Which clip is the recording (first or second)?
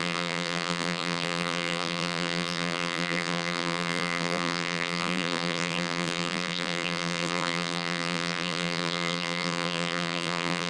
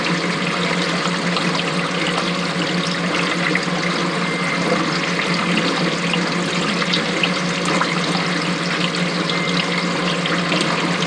second